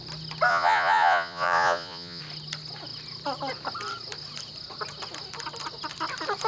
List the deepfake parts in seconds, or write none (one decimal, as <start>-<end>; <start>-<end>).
0.5-2.2